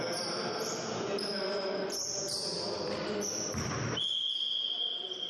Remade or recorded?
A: remade